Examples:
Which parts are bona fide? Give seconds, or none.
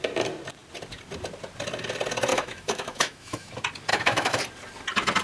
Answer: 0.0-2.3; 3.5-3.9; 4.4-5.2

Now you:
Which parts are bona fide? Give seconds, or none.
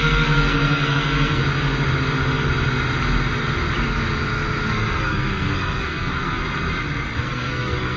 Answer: 1.4-4.7; 6.4-7.2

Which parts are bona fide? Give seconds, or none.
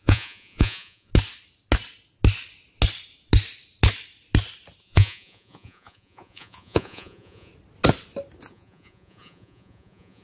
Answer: 1.1-4.8; 7.5-8.5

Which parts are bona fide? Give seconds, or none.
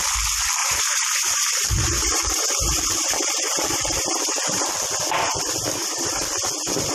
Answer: 0.0-0.6; 4.7-6.9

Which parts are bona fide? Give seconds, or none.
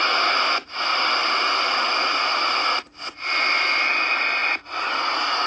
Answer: 0.0-5.5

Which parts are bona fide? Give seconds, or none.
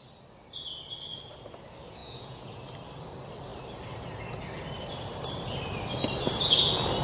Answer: 0.0-2.0; 2.6-7.0